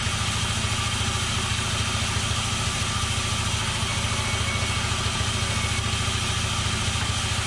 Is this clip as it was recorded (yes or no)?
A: yes